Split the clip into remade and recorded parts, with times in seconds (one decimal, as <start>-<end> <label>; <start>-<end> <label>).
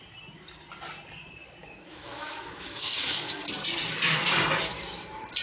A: 0.0-1.6 recorded; 1.6-3.3 remade; 3.3-5.4 recorded